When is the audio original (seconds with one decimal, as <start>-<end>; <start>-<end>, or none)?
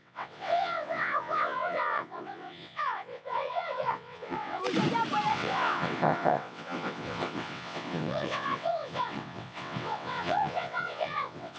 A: 4.6-5.3